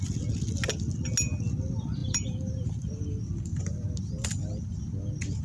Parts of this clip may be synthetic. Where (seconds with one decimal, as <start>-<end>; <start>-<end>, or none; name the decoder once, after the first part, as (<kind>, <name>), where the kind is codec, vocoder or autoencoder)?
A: 2.0-3.0 (vocoder, BigVGAN v2)